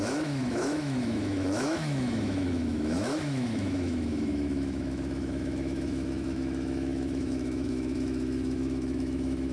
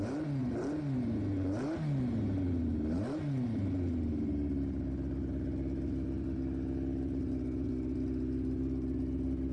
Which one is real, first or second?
second